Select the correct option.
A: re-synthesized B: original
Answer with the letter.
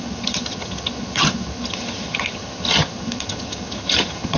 A